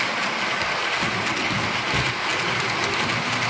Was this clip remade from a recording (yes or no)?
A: no